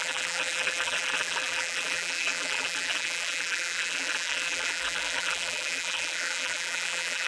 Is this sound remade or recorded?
remade